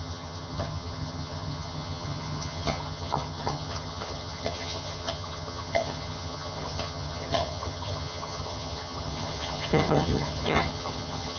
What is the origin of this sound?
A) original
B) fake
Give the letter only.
B